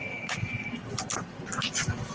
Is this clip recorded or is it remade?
recorded